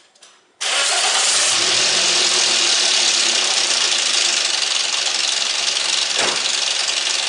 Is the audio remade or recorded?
recorded